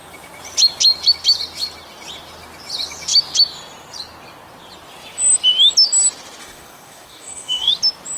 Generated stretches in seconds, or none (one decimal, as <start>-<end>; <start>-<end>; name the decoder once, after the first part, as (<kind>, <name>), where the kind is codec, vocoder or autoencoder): 6.4-7.7 (codec, DAC)